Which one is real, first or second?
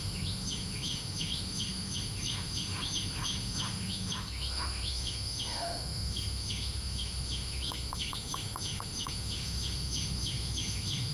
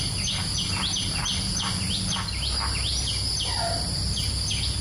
second